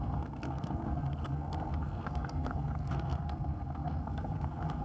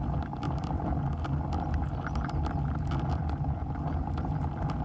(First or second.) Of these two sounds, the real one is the second